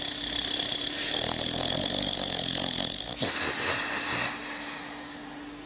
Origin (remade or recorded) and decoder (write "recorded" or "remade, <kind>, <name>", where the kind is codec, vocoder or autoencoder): recorded